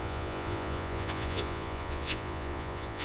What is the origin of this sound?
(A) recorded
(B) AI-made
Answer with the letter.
B